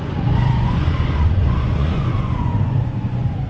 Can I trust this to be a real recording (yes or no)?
no